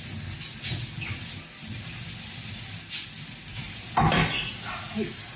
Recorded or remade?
recorded